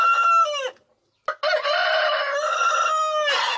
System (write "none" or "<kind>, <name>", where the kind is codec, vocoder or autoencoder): none